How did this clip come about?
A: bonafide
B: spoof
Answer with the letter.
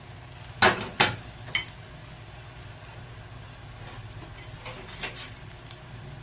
A